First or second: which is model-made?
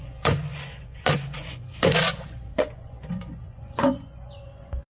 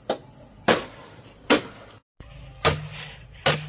first